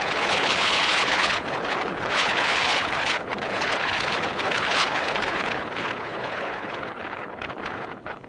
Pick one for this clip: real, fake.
fake